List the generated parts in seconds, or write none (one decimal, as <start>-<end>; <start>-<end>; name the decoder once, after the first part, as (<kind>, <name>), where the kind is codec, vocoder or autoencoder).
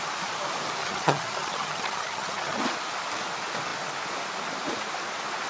0.8-2.6 (vocoder, HiFi-GAN)